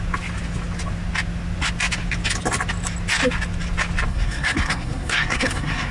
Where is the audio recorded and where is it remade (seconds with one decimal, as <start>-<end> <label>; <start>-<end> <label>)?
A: 0.0-4.1 recorded; 4.1-5.9 remade